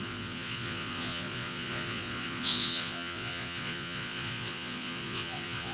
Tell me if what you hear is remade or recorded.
remade